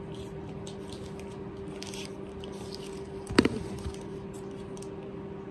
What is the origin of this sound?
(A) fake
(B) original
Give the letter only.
B